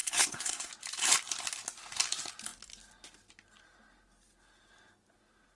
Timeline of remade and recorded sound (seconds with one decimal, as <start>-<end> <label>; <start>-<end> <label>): 0.0-0.7 remade; 0.7-5.6 recorded